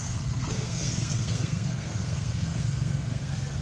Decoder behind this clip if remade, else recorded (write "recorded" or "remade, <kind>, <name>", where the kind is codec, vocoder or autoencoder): remade, codec, SNAC